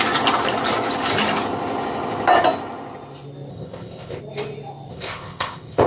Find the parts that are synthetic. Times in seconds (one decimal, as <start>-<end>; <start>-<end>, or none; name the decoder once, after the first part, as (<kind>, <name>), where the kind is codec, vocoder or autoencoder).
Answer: 3.5-4.2 (codec, ZipCodec); 4.9-5.9